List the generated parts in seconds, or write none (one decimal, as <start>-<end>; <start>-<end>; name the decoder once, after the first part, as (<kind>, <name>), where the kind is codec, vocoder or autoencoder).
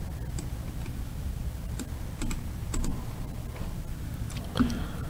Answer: none